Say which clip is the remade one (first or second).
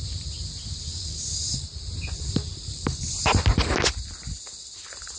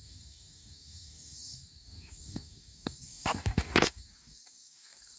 second